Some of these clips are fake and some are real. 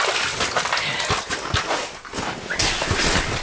real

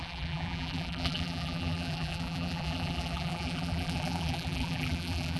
fake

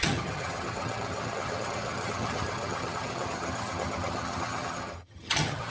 fake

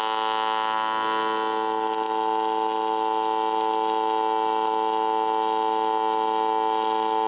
real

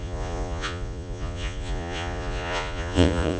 fake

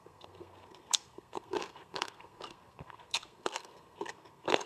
fake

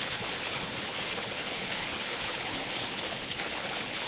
fake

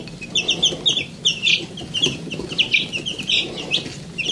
real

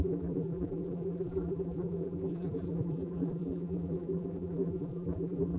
fake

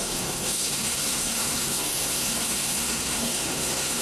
fake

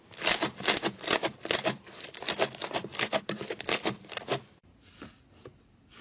real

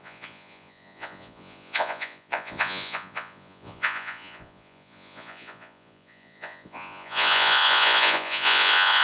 fake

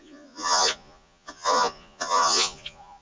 fake